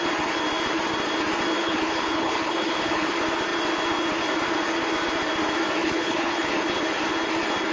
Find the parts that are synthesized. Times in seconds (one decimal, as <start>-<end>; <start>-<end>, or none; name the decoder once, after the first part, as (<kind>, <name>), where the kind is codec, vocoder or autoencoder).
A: 1.6-3.1 (codec, HILCodec); 5.8-6.5